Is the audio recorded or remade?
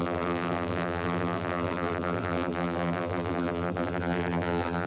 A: remade